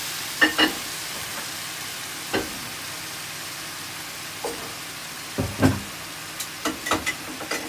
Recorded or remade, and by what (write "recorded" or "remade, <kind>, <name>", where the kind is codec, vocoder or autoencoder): recorded